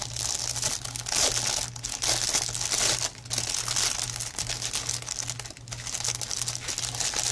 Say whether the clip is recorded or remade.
recorded